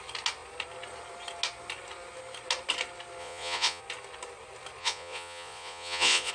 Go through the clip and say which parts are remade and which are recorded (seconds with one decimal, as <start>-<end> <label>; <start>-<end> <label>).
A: 0.0-3.2 recorded; 3.2-3.8 remade; 3.8-4.8 recorded; 4.8-6.3 remade

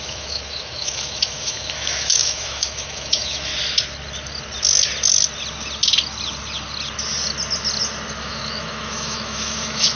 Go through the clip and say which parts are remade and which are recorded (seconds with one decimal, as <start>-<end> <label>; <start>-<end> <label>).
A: 0.0-3.5 remade; 3.5-8.2 recorded; 8.2-10.0 remade